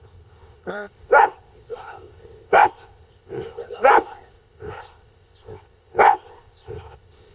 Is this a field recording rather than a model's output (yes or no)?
no